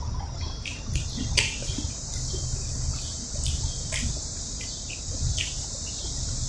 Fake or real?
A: real